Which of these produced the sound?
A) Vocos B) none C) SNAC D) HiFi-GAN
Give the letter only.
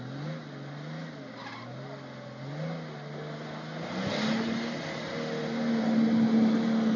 B